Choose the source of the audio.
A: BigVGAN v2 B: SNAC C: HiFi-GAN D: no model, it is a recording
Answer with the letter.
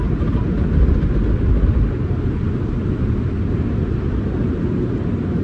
D